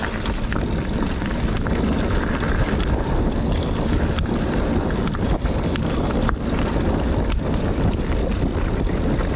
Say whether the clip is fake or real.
real